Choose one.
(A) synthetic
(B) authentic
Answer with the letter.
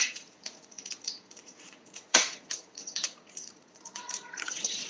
A